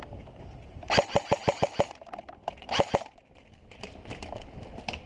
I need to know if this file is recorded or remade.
recorded